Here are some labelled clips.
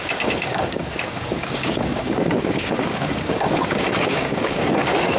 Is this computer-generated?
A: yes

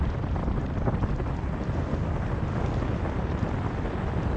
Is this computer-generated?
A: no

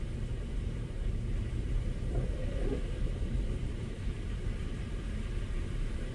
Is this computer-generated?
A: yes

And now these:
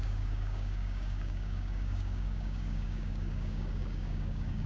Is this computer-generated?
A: yes